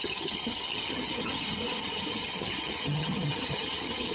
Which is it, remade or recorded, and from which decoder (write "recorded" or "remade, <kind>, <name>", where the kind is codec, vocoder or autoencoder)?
remade, vocoder, HiFi-GAN